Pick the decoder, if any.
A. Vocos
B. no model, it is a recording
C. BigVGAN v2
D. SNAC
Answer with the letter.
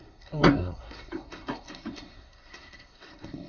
D